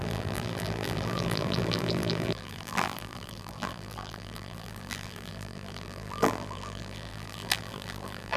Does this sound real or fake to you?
fake